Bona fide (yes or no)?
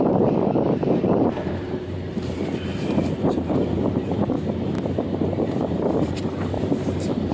no